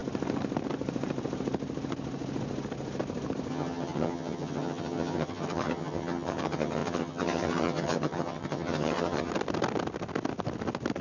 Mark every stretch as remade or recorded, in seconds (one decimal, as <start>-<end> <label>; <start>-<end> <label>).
0.0-3.5 recorded; 3.5-9.3 remade; 9.3-11.0 recorded